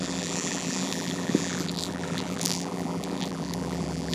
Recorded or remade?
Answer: remade